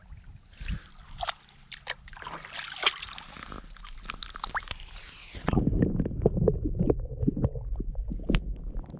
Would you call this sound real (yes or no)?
yes